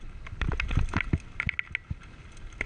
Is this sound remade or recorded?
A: recorded